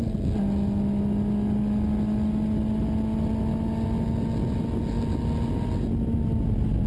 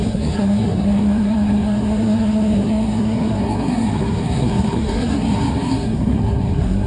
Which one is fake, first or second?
second